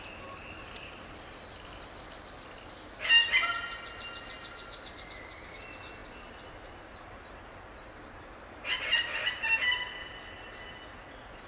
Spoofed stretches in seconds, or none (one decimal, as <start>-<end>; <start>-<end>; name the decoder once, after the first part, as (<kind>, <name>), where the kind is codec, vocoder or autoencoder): none